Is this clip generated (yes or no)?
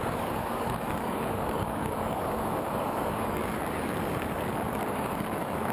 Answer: yes